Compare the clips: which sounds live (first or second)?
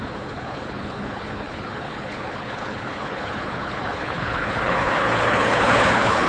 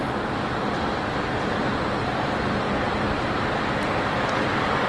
second